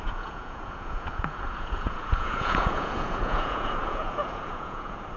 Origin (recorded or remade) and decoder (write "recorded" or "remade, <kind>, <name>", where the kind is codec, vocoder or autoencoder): remade, vocoder, Vocos